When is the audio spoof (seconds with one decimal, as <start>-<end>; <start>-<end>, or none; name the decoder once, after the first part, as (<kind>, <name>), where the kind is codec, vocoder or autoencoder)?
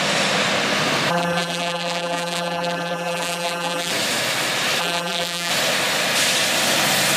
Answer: 1.1-3.9 (vocoder, BigVGAN v2); 4.8-5.5